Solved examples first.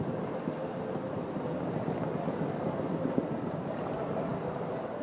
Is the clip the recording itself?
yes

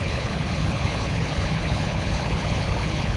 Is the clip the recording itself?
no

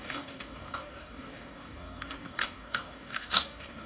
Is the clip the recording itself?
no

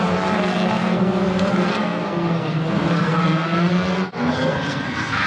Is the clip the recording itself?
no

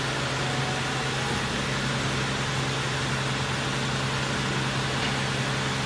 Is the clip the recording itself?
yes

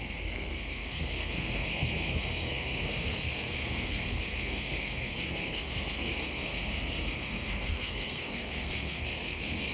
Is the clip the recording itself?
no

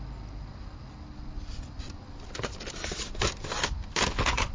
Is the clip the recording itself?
yes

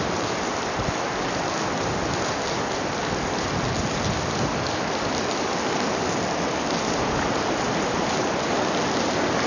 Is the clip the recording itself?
yes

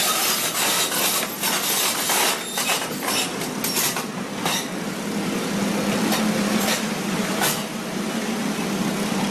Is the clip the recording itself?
yes